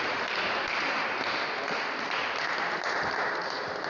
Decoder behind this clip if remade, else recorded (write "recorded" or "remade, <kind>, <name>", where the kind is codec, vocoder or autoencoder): remade, vocoder, BigVGAN v2